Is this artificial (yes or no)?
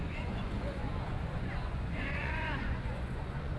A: yes